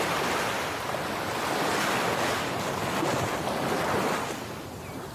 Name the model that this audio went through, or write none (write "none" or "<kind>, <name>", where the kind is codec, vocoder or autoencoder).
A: none